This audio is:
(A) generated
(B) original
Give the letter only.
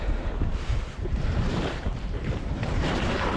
A